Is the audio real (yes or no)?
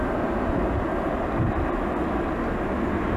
yes